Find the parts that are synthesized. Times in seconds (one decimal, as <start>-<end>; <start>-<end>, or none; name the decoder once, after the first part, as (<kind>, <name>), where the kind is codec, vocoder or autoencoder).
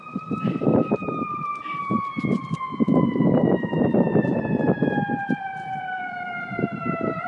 0.0-2.4 (vocoder, BigVGAN v2); 4.7-7.3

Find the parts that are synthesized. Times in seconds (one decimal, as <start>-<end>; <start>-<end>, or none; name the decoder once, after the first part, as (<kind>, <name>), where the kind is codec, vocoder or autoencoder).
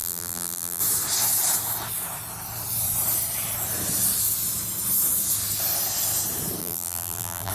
0.0-0.8 (vocoder, BigVGAN v2); 6.6-7.5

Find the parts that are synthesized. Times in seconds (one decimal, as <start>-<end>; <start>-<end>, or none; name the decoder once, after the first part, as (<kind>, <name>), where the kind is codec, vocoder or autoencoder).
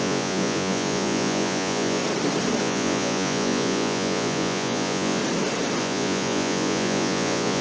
0.0-2.0 (vocoder, Vocos); 2.6-5.2; 5.8-7.6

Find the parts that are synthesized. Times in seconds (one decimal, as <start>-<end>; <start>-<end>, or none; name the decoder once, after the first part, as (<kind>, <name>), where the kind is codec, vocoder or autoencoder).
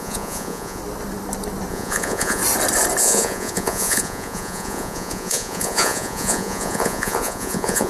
0.0-0.8 (vocoder, Vocos); 1.7-2.4; 3.0-7.9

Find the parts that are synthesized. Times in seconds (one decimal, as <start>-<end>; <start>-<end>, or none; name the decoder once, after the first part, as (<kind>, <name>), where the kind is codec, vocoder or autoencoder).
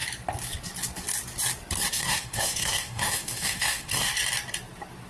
1.9-4.1 (autoencoder, DAC-VAE)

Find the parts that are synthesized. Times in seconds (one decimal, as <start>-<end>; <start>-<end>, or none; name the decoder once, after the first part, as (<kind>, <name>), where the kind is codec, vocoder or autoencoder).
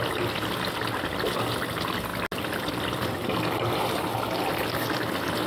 none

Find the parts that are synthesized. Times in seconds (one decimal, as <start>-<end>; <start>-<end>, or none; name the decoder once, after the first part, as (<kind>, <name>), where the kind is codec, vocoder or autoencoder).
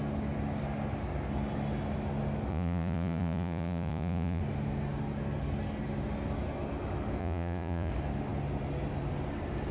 2.5-4.4 (vocoder, Vocos); 7.2-7.9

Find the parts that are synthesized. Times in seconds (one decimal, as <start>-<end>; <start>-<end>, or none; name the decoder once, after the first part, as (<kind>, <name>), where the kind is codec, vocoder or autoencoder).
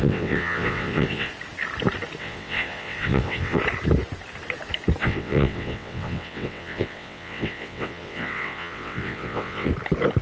0.0-1.3 (vocoder, WaveNeXt); 2.2-3.6; 5.0-9.7